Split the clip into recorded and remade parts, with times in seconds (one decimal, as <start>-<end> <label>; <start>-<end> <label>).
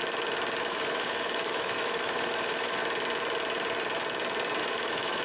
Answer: 0.0-0.6 recorded; 0.6-2.8 remade; 2.8-4.6 recorded; 4.6-5.2 remade